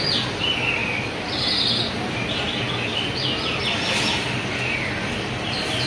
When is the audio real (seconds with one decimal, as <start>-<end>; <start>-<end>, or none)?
0.0-5.9